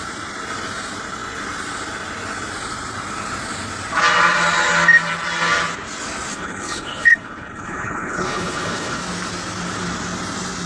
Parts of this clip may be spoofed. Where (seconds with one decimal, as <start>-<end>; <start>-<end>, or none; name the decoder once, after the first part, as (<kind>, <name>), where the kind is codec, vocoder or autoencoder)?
6.3-9.0 (codec, HILCodec)